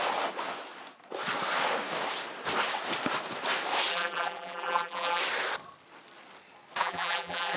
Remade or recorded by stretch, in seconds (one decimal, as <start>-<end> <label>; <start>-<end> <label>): 0.0-3.9 recorded; 3.9-5.2 remade; 5.2-6.8 recorded; 6.8-7.6 remade